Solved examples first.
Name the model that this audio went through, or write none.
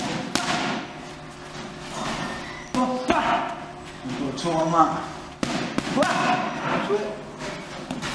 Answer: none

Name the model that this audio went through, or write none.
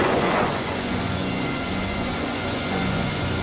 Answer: vocoder, Vocos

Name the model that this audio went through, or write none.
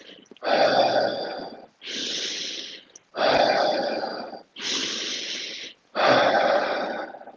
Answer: none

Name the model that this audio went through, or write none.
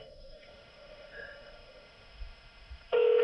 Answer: autoencoder, DAC-VAE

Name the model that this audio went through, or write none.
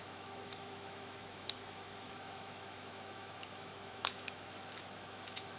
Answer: autoencoder, DAC-VAE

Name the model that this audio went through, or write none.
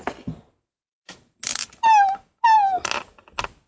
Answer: none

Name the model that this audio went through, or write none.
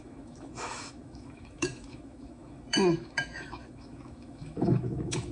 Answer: autoencoder, DAC-VAE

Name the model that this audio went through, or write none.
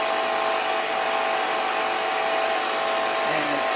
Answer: none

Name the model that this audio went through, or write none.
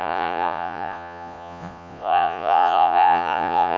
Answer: vocoder, Vocos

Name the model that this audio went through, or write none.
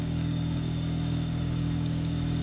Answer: codec, DAC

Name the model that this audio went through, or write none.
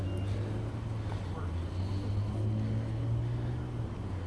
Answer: none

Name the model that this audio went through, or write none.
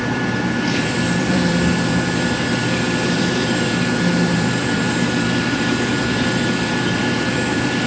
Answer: vocoder, BigVGAN v2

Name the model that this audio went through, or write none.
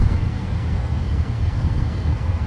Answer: codec, SNAC